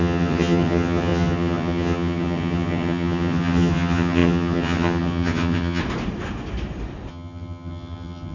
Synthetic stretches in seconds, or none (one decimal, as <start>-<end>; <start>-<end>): 0.0-5.8; 7.1-8.3